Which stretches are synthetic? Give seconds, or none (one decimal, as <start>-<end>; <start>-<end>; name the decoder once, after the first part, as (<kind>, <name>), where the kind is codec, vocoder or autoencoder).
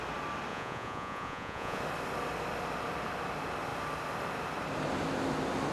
0.5-1.8 (vocoder, Vocos)